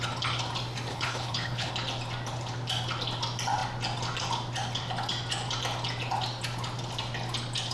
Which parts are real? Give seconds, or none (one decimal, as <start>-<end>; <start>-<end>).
0.0-0.9; 1.7-7.7